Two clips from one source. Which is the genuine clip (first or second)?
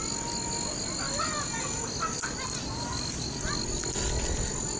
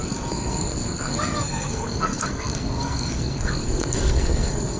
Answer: first